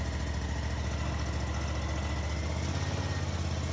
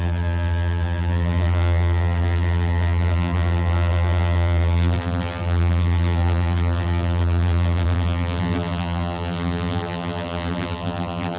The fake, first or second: second